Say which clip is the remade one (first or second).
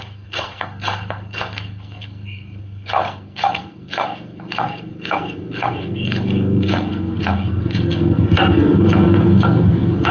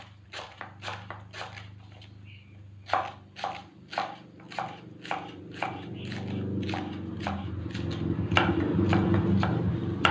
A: first